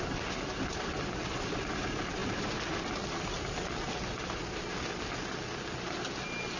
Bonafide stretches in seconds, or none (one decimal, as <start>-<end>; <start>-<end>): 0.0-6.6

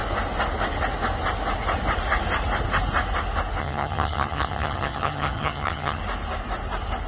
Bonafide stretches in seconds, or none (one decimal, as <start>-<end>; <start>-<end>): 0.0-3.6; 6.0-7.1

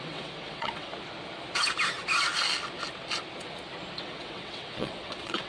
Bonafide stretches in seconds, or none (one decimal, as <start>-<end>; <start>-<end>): 0.9-4.0

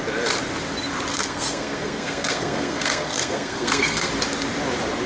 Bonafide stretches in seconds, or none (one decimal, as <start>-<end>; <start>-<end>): 0.0-1.1; 4.1-5.1

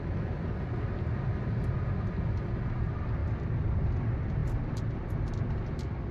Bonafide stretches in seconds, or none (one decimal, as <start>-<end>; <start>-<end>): 0.0-6.1